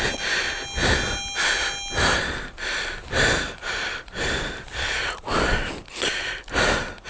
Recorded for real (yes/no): yes